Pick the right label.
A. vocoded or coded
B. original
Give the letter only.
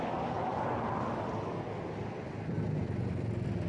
B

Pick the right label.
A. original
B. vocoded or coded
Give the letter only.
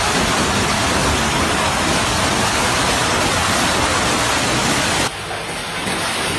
A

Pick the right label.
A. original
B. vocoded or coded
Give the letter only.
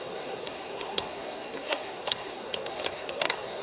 B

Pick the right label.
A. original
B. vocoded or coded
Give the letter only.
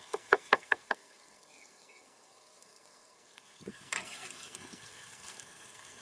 B